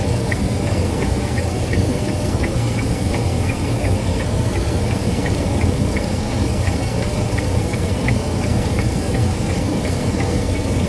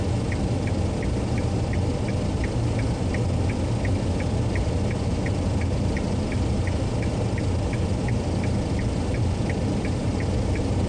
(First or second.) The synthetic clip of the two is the first